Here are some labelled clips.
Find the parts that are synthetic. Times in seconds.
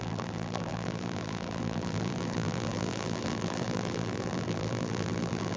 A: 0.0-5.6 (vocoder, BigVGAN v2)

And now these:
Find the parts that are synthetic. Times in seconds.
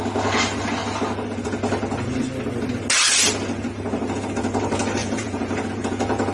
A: 5.0-6.3 (vocoder, Vocos)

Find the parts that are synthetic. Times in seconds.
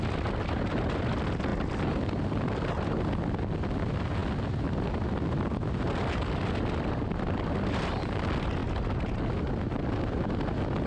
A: none